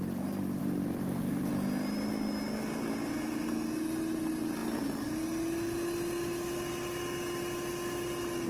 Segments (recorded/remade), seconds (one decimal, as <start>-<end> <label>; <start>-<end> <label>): 0.0-0.6 recorded; 0.6-1.5 remade; 1.5-8.5 recorded